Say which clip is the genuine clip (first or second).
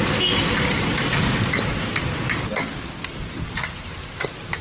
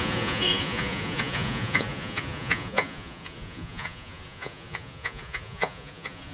first